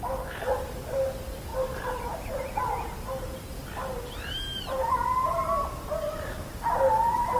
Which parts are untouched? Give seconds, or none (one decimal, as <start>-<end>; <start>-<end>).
0.0-7.4